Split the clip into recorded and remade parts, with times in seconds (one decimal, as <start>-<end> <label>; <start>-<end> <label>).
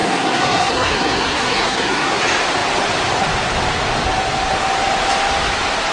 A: 0.0-2.2 remade; 2.2-5.9 recorded